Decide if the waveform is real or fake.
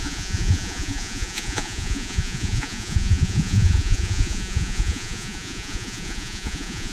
fake